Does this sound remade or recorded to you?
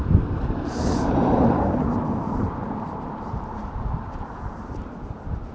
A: remade